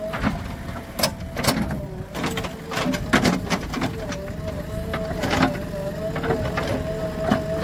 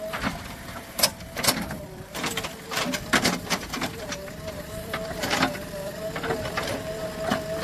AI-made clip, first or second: second